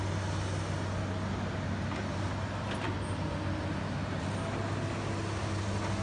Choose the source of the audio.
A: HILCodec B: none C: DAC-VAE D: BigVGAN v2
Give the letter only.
B